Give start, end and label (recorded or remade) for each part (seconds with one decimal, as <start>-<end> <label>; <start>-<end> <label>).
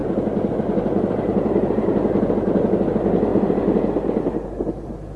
0.0-3.3 recorded; 3.3-4.2 remade; 4.2-5.2 recorded